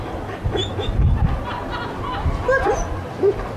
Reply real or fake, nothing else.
real